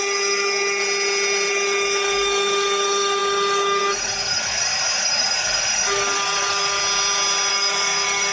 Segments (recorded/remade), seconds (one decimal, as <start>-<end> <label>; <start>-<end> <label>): 0.0-0.8 remade; 0.8-1.5 recorded; 1.5-6.8 remade; 6.8-7.5 recorded; 7.5-8.3 remade